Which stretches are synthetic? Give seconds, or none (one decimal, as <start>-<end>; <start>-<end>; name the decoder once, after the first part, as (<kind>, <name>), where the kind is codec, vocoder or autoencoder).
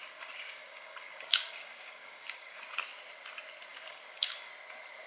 0.0-2.6 (codec, DAC); 3.7-4.5